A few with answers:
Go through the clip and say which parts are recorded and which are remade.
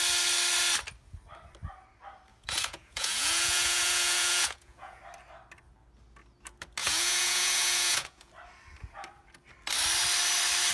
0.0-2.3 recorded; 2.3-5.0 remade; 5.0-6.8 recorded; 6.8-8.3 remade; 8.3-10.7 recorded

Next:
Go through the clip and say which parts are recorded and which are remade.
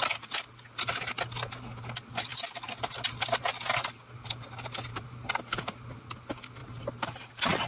0.0-4.9 recorded; 4.9-5.4 remade; 5.4-6.6 recorded; 6.6-7.7 remade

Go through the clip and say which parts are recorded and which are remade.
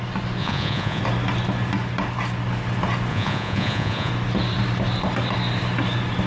0.0-0.4 recorded; 0.4-1.0 remade; 1.0-3.1 recorded; 3.1-4.1 remade; 4.1-6.3 recorded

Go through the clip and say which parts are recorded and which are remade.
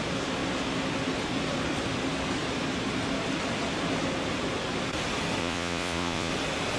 0.0-5.4 recorded; 5.4-6.3 remade; 6.3-6.8 recorded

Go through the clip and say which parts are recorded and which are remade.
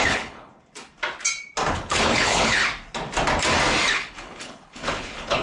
0.0-0.5 remade; 0.5-1.7 recorded; 1.7-2.6 remade; 2.6-3.9 recorded; 3.9-5.4 remade